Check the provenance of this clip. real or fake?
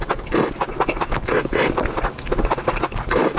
real